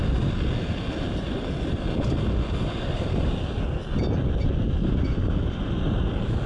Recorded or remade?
recorded